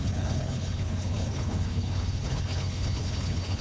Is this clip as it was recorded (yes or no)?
no